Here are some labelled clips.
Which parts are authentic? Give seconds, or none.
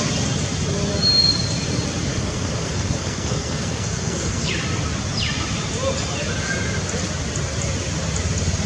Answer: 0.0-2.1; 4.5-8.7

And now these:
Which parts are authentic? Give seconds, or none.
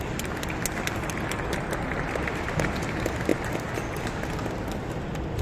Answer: 0.0-5.4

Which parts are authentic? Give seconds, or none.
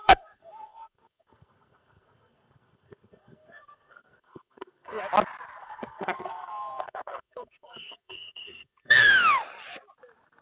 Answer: 5.0-5.6; 9.1-10.4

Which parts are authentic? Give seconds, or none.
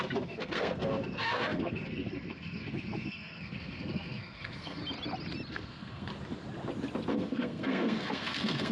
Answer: 4.8-5.5; 6.1-7.1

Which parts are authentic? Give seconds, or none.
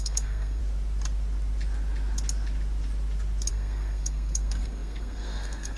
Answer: 0.6-3.5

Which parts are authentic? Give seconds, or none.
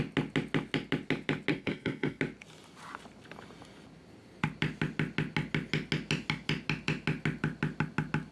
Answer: 0.0-1.5; 2.2-8.3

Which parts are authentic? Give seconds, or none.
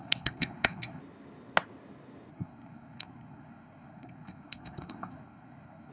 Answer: 1.0-2.3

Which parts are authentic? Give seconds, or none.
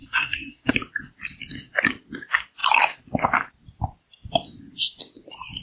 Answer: 0.7-5.6